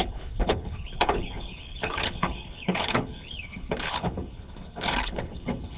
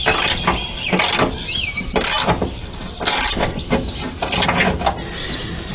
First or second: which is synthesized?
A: first